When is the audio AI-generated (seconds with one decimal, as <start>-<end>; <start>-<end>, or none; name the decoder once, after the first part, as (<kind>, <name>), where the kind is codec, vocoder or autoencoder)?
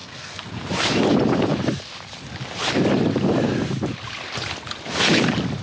0.0-0.5 (codec, SNAC)